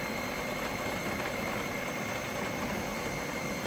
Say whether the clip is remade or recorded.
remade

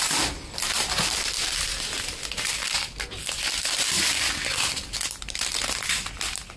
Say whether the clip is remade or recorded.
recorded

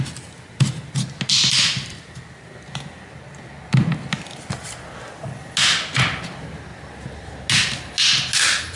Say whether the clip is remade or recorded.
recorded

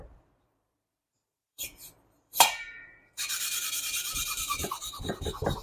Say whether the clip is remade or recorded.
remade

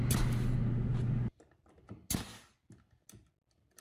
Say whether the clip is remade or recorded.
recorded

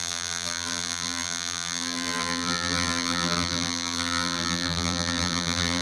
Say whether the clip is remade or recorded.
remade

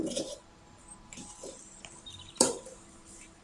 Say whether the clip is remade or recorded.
remade